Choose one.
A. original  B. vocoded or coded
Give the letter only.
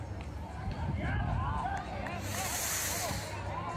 A